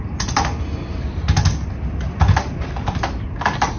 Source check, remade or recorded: recorded